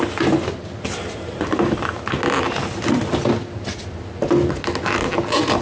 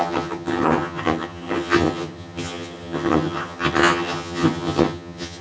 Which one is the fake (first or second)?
second